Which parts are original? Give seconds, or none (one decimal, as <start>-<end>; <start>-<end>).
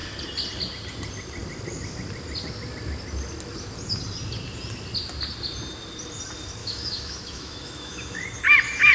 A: 0.0-6.6; 8.2-8.9